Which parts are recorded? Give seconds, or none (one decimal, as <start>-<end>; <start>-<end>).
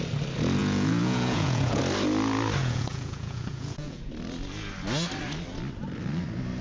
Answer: 0.0-0.6; 1.8-2.6; 4.1-6.6